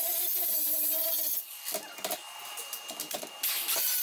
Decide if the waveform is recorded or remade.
recorded